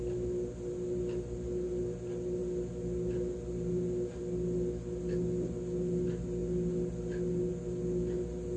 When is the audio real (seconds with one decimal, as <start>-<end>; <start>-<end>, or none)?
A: 0.0-8.6